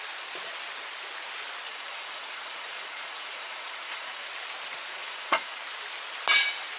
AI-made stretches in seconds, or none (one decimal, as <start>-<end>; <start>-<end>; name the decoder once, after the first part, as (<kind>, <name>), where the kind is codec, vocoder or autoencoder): 1.7-4.3 (vocoder, Vocos); 5.0-5.6